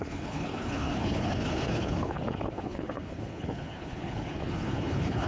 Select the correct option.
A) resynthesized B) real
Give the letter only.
A